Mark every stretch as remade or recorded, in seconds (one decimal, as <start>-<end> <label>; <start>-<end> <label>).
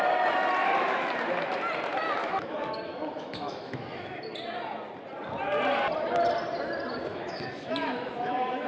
0.0-0.6 recorded; 0.6-1.1 remade; 1.1-2.2 recorded; 2.2-4.2 remade; 4.2-7.1 recorded; 7.1-8.7 remade